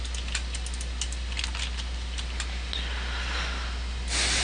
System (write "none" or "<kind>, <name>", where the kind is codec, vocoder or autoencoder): none